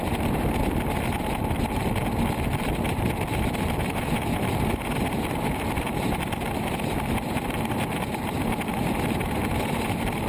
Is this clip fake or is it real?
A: fake